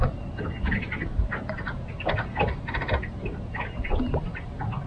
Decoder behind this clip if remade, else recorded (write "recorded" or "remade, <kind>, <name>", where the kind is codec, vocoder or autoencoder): recorded